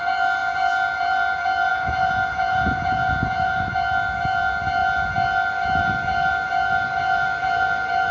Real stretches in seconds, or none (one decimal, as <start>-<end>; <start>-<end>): 0.0-1.7; 3.7-8.1

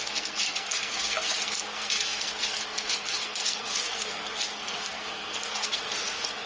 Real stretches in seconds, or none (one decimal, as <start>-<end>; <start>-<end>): none

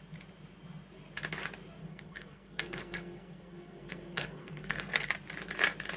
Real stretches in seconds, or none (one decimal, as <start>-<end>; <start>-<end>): 0.0-1.8; 5.1-6.0

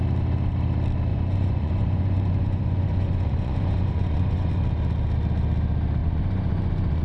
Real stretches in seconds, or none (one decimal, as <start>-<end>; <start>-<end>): 0.0-1.1; 4.6-6.0

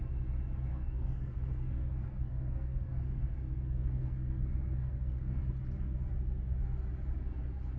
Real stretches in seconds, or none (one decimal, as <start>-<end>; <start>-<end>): 0.0-0.7; 5.4-7.8

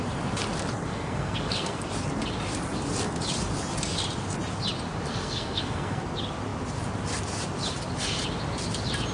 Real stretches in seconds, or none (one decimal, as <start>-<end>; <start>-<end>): 0.0-0.9; 1.9-5.1; 6.0-9.1